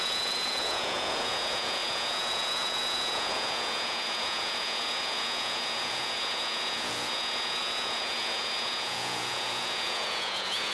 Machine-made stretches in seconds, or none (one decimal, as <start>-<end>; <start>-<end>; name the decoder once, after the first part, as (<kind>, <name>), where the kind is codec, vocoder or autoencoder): 0.0-10.7 (vocoder, Vocos)